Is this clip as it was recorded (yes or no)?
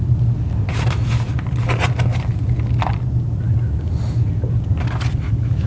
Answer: yes